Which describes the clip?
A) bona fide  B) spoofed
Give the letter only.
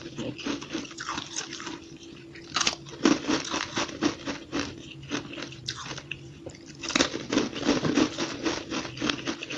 A